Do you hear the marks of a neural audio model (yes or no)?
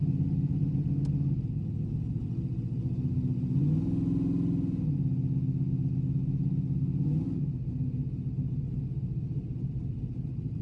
no